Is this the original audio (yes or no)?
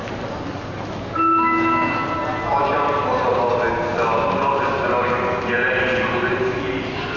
yes